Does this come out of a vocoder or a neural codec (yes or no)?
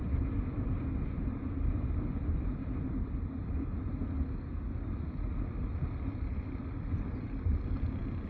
no